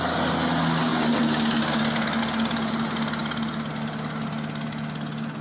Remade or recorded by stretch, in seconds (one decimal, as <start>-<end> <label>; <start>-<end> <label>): 0.0-5.4 recorded